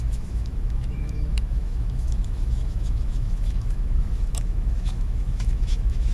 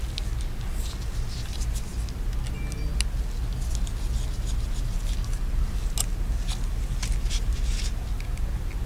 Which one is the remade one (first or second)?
first